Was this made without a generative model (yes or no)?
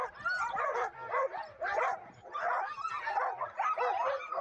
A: yes